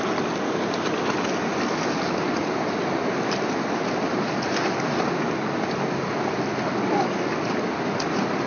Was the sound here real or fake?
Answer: real